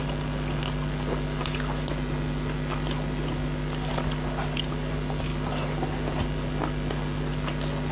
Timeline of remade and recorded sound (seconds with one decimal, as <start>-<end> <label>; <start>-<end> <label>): 0.0-7.9 recorded